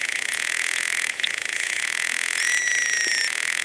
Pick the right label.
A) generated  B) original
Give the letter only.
A